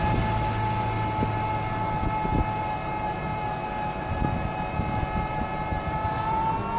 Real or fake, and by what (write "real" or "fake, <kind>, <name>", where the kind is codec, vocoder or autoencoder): real